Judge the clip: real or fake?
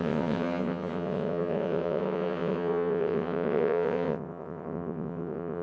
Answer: fake